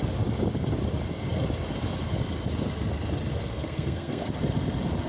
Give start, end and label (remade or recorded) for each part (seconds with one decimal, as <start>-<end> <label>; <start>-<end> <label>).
0.0-3.3 recorded; 3.3-4.3 remade; 4.3-5.1 recorded